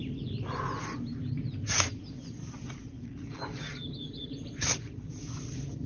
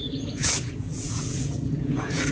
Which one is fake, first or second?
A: second